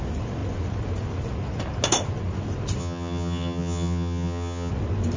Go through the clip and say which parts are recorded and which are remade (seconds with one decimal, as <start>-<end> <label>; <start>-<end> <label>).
0.0-2.8 recorded; 2.8-4.7 remade; 4.7-5.2 recorded